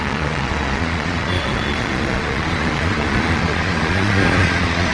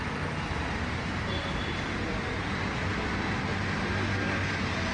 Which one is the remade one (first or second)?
first